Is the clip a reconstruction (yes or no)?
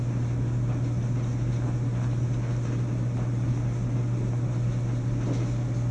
no